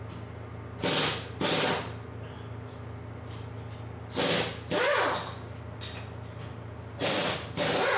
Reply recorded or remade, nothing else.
recorded